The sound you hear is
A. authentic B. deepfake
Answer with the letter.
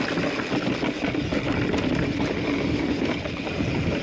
A